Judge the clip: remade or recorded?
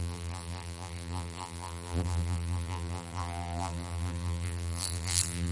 remade